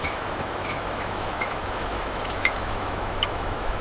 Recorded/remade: remade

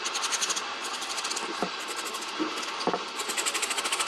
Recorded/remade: recorded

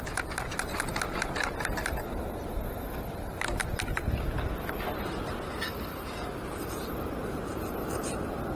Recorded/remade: recorded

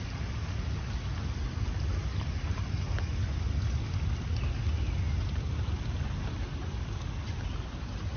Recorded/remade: recorded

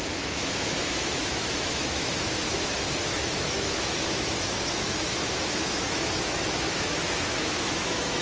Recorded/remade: remade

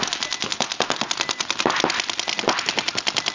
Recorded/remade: recorded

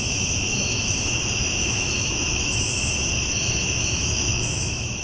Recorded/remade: remade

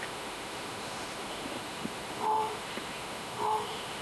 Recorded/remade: remade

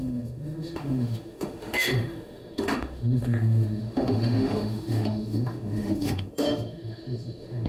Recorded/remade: remade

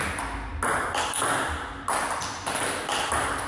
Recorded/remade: recorded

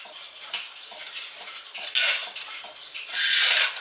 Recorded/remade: recorded